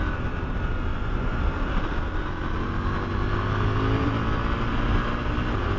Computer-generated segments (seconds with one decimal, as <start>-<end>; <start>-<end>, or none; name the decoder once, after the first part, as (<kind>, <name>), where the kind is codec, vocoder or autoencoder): 0.9-1.4 (vocoder, Vocos)